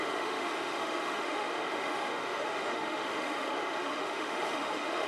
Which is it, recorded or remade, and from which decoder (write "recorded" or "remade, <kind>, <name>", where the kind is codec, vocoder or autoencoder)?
remade, autoencoder, DAC-VAE